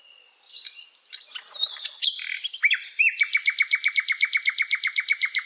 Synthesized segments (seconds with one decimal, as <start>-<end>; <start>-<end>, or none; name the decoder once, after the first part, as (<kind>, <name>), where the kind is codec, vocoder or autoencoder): 0.0-5.5 (vocoder, BigVGAN v2)